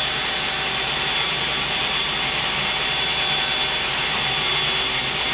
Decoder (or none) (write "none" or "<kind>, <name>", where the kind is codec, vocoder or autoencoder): none